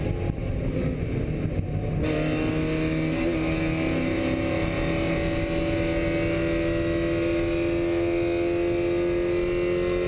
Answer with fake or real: real